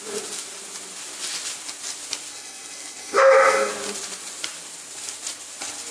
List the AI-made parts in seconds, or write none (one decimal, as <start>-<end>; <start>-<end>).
2.3-3.7